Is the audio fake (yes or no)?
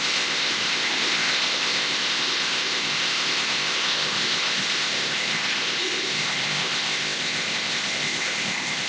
yes